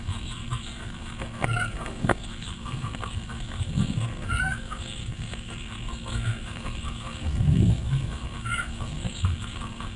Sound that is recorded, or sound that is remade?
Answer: remade